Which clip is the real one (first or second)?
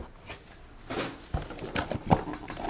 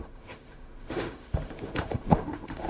first